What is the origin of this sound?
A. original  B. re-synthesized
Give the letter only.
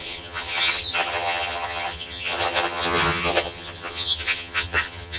B